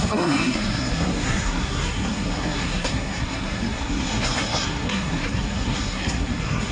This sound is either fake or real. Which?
fake